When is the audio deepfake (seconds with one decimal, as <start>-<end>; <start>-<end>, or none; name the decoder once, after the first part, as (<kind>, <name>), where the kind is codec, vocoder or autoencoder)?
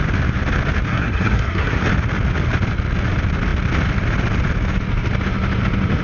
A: 0.9-1.8 (codec, SNAC)